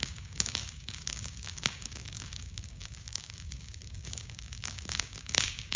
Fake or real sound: fake